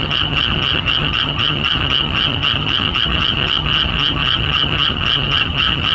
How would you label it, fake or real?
fake